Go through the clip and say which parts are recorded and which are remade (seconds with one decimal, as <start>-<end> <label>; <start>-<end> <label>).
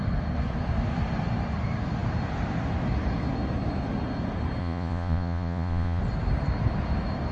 0.0-4.6 recorded; 4.6-6.0 remade; 6.0-7.3 recorded